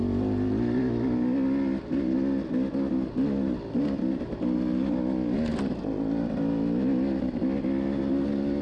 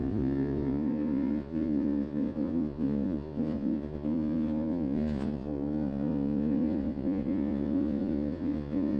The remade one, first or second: second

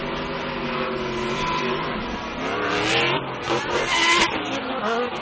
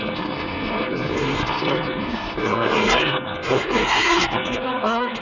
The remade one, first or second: second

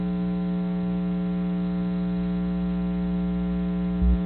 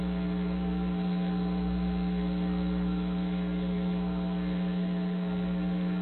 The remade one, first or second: second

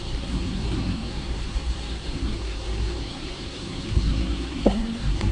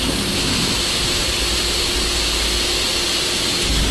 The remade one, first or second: first